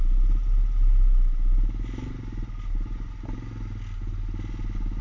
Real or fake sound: real